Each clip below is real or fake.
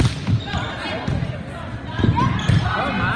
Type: real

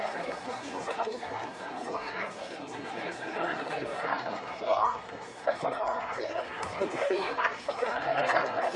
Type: fake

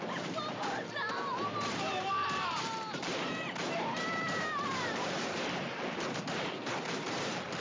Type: fake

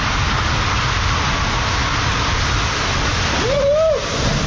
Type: real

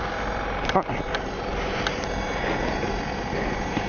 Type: real